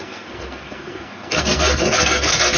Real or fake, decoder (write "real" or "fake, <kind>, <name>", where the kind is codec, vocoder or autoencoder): fake, codec, SNAC